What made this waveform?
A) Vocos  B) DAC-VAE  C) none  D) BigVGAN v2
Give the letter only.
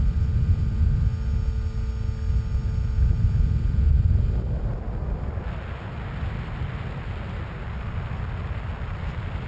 C